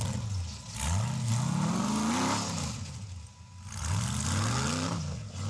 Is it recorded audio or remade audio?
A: recorded